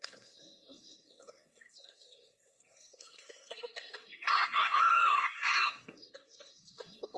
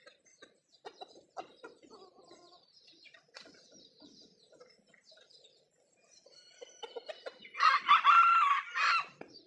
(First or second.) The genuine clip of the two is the second